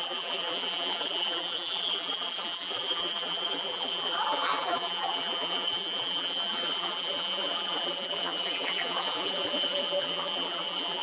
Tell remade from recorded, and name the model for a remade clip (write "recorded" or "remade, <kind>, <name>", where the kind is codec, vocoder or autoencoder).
remade, vocoder, BigVGAN v2